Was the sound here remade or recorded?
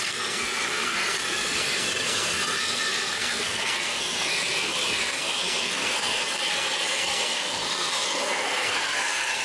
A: remade